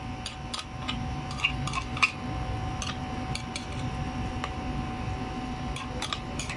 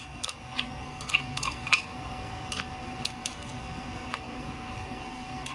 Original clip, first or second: first